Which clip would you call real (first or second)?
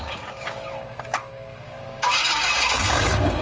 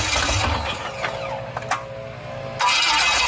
second